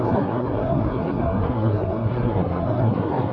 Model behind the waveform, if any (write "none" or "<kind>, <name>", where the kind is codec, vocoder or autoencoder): codec, SNAC